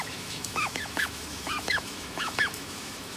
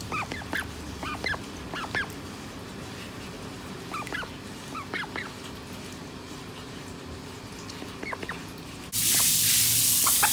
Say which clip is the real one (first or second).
second